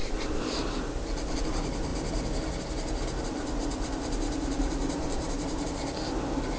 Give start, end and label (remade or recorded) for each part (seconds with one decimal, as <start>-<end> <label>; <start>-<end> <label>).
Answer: 0.0-1.9 remade; 1.9-3.2 recorded; 3.2-6.0 remade; 6.0-6.6 recorded